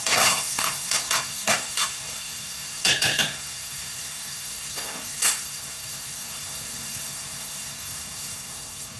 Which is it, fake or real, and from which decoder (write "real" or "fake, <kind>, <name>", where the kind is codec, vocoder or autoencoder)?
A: fake, codec, SNAC